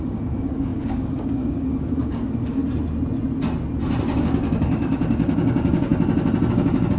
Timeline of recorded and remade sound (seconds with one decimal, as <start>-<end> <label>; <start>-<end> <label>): 0.0-2.6 remade; 2.6-4.2 recorded; 4.2-5.9 remade; 5.9-6.5 recorded; 6.5-7.0 remade